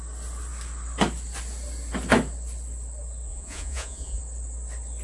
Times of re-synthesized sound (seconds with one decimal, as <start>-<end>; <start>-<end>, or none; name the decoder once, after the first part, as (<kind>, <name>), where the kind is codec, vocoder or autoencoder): 3.3-4.2 (vocoder, Vocos)